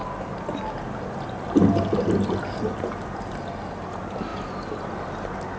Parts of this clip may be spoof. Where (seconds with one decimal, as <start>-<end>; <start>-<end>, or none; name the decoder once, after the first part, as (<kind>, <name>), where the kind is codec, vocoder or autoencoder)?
none